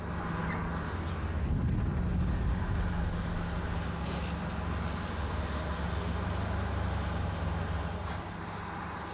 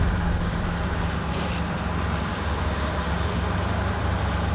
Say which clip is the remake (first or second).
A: second